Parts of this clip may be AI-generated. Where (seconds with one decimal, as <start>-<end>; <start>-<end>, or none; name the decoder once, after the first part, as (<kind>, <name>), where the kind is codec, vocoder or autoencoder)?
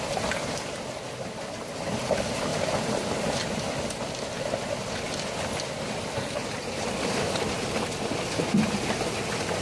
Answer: none